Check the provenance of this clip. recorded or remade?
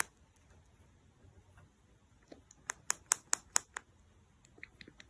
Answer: recorded